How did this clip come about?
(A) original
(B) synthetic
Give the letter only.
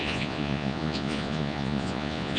B